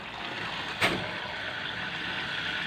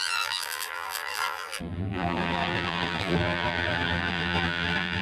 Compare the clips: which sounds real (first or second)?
first